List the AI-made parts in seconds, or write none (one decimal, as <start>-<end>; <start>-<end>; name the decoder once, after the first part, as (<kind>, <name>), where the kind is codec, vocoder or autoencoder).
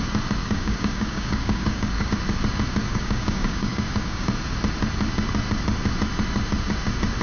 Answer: 0.4-2.1 (codec, DAC); 2.9-4.3